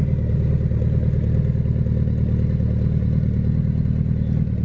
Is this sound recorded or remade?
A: recorded